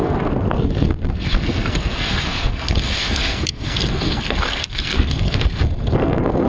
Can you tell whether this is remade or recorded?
remade